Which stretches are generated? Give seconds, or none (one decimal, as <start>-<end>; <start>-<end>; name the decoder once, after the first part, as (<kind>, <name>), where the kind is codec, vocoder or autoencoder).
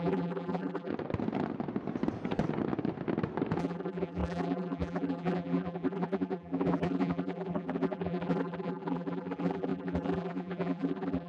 0.0-0.9 (vocoder, BigVGAN v2); 3.6-11.3